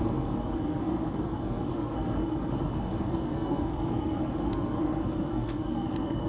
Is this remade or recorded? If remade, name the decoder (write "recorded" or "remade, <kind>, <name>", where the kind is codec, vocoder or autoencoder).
remade, codec, SNAC